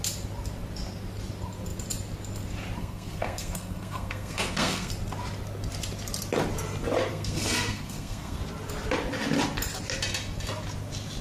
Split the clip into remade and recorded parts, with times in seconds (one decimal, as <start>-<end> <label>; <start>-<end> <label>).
0.0-2.8 recorded; 2.8-4.9 remade; 4.9-7.1 recorded; 7.1-8.4 remade; 8.4-11.2 recorded